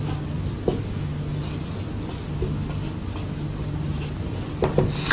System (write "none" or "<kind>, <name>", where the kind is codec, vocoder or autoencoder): none